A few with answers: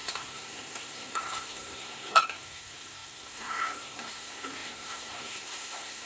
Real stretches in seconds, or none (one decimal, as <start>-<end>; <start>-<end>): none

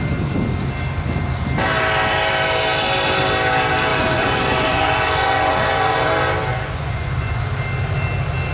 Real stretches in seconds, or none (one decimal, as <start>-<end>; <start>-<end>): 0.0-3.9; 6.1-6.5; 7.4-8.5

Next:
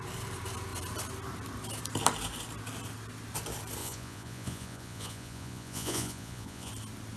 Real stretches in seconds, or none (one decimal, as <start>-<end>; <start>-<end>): 0.0-3.8; 6.7-7.2

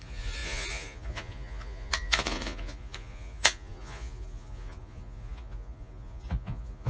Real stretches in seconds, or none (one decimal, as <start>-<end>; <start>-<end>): none

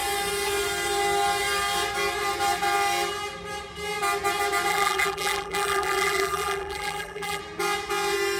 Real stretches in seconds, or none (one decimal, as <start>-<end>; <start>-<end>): 0.0-4.7; 7.4-8.4

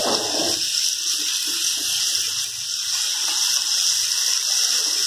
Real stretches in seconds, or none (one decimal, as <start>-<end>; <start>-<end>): 0.0-5.1

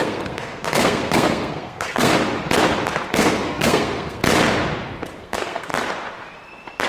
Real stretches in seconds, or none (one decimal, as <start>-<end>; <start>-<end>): 2.1-3.1; 4.2-5.2; 5.7-6.9